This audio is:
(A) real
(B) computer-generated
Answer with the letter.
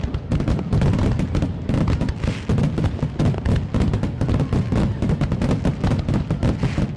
A